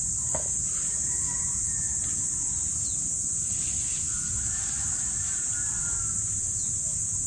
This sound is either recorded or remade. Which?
recorded